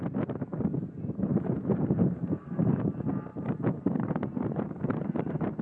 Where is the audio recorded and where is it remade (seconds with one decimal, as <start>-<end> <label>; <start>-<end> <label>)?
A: 0.0-1.3 recorded; 1.3-2.7 remade; 2.7-3.3 recorded; 3.3-5.6 remade